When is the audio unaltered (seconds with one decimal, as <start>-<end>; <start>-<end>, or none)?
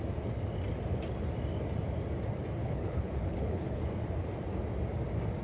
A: 0.0-2.6; 3.8-5.4